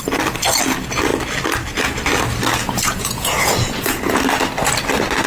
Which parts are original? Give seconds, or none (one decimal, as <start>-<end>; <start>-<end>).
0.0-2.6; 4.2-5.3